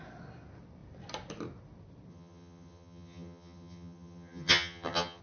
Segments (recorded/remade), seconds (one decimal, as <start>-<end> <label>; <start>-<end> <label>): 0.0-2.1 recorded; 2.1-5.2 remade